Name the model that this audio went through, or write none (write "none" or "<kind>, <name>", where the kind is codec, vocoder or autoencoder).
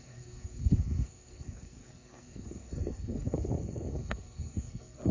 codec, SNAC